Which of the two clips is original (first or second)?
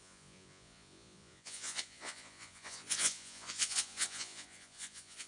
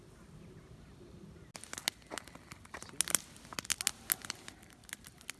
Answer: second